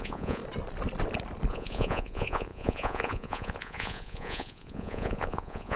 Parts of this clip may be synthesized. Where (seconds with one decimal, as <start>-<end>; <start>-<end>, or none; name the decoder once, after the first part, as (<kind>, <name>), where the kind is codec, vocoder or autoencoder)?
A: 0.0-0.4 (vocoder, Vocos); 1.5-5.8